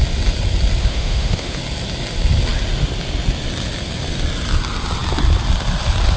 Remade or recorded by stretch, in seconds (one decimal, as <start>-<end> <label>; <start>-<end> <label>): 0.0-0.8 recorded; 0.8-1.6 remade; 1.6-6.2 recorded